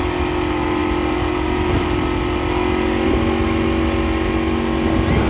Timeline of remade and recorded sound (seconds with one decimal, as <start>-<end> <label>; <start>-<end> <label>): 0.0-5.3 recorded